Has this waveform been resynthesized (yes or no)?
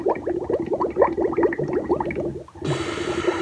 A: no